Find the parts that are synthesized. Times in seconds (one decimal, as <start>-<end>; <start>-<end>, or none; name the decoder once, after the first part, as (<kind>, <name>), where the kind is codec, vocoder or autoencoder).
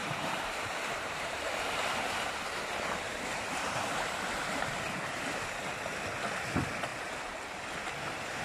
0.0-1.5 (vocoder, BigVGAN v2); 3.1-5.4